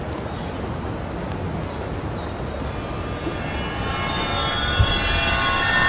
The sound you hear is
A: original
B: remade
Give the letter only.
A